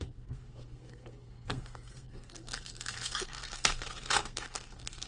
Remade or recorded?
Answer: remade